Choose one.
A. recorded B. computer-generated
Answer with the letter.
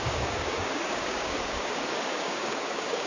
B